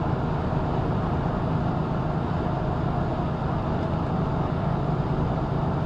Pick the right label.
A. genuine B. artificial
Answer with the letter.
A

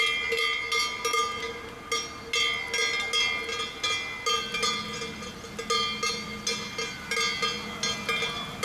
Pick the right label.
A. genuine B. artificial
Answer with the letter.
A